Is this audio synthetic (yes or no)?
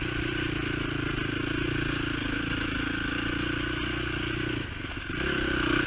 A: no